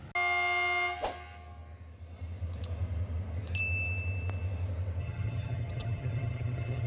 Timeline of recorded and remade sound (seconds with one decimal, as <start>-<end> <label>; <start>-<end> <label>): 0.0-5.0 recorded; 5.0-6.9 remade